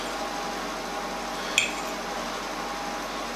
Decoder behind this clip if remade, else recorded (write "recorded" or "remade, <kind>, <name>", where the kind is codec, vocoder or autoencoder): recorded